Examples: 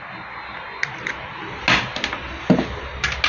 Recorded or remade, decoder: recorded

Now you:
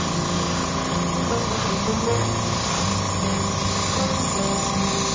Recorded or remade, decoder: recorded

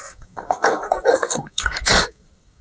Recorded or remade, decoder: remade, codec, SNAC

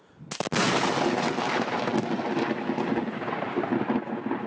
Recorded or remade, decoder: recorded